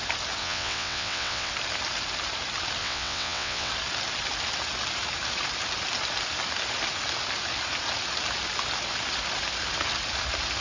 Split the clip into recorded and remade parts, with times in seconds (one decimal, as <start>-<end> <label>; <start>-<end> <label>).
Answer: 0.0-0.4 recorded; 0.4-1.5 remade; 1.5-2.8 recorded; 2.8-3.7 remade; 3.7-10.6 recorded